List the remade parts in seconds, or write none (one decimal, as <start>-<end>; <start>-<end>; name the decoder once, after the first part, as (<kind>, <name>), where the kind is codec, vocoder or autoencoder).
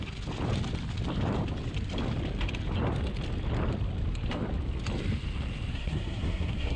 5.7-6.8 (codec, SNAC)